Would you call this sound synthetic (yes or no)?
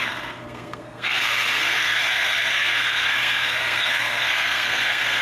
yes